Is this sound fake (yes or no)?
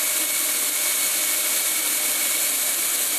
no